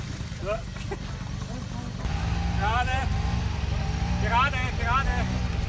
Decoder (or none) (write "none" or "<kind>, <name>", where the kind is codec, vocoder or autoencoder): none